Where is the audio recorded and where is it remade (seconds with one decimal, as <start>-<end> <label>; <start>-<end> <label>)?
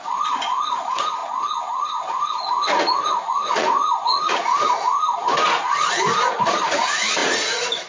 0.0-7.9 remade